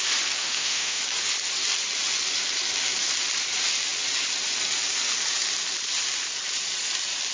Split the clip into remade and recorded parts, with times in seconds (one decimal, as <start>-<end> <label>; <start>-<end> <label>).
0.0-0.4 recorded; 0.4-1.0 remade; 1.0-7.3 recorded